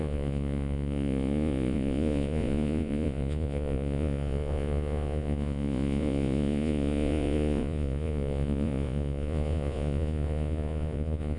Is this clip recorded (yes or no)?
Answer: no